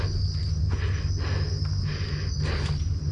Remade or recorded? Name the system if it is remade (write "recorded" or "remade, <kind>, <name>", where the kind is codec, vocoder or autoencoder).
recorded